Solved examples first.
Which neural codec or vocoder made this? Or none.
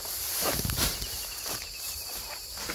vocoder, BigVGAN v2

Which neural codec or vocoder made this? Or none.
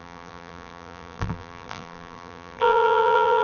vocoder, BigVGAN v2